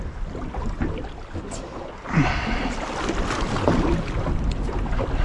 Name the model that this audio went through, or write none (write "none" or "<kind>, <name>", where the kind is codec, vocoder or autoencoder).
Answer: none